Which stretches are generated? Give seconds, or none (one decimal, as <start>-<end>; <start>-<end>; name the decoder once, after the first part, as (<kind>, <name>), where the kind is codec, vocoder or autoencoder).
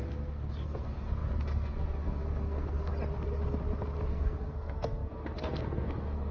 0.0-2.9 (codec, SNAC); 4.1-6.3